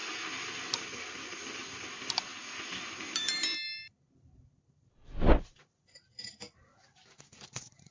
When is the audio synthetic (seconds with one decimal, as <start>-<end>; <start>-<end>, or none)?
0.8-2.3; 3.1-7.9